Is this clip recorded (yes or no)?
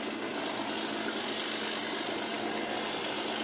yes